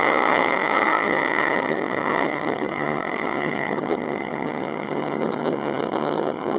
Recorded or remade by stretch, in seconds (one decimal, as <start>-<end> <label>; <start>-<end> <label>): 0.0-6.6 remade